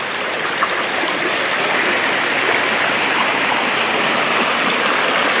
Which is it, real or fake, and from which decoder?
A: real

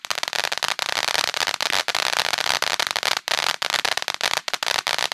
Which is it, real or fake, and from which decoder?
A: real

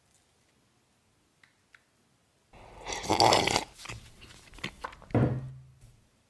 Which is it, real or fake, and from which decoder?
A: real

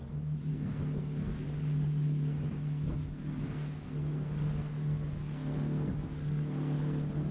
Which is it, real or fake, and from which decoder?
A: fake, codec, SNAC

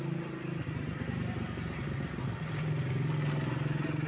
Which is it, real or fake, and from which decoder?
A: real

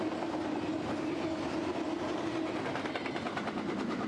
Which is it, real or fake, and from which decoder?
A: real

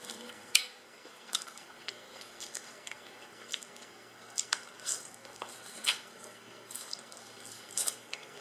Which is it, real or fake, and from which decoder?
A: fake, codec, SNAC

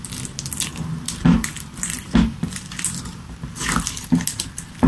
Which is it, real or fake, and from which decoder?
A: real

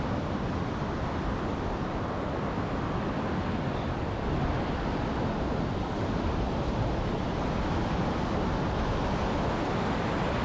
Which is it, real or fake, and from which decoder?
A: real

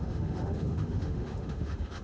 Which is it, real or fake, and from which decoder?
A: fake, autoencoder, DAC-VAE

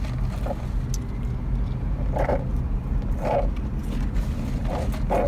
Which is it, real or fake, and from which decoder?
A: real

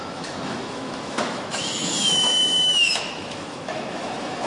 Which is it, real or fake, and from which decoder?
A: fake, autoencoder, DAC-VAE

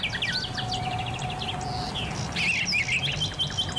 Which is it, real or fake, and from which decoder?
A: real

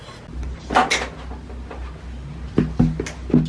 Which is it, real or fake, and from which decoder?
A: real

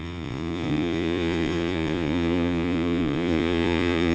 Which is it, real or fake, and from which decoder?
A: fake, vocoder, Vocos